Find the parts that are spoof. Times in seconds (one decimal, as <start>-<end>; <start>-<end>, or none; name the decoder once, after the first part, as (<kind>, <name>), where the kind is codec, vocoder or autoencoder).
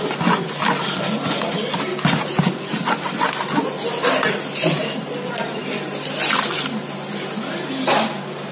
none